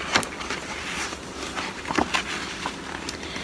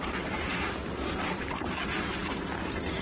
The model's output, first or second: second